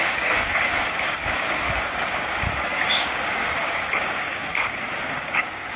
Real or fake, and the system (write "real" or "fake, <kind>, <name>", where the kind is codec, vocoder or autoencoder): fake, codec, DAC